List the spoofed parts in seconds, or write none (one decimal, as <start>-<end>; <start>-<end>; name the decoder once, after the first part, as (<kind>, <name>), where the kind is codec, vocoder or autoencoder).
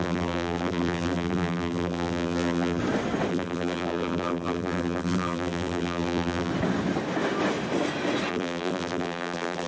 0.0-2.8 (vocoder, BigVGAN v2); 3.3-6.5; 8.3-9.7